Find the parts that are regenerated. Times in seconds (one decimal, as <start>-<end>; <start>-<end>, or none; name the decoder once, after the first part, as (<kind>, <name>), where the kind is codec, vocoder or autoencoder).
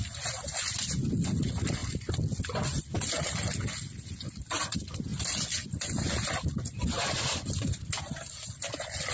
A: none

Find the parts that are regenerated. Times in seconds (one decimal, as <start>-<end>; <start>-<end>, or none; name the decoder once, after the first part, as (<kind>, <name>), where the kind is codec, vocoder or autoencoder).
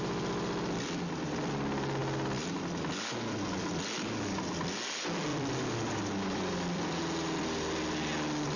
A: 5.3-7.0 (vocoder, BigVGAN v2)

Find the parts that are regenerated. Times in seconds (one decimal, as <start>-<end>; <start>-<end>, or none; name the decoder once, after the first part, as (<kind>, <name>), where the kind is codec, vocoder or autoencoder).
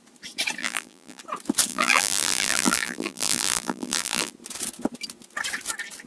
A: 0.6-1.2 (vocoder, BigVGAN v2); 1.7-4.3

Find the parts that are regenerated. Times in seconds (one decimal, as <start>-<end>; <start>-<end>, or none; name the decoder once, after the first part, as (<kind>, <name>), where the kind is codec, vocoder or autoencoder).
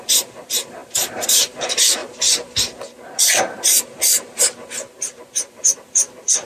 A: 0.0-2.0 (vocoder, BigVGAN v2); 5.5-6.5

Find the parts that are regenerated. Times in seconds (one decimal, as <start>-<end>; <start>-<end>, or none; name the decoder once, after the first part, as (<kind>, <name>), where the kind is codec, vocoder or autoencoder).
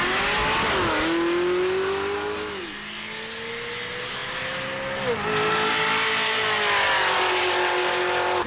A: none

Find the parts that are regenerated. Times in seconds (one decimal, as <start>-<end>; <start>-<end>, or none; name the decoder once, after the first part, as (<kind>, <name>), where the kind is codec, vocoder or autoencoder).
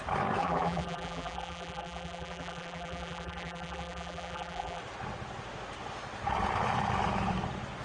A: 0.4-4.8 (vocoder, BigVGAN v2)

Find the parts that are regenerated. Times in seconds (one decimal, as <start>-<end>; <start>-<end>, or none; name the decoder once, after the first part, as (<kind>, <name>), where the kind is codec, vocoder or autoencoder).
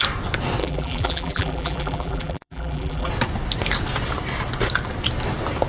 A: 0.6-3.1 (vocoder, BigVGAN v2)